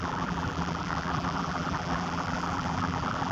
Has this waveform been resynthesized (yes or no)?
yes